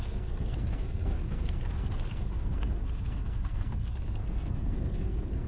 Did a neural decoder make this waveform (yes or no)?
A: yes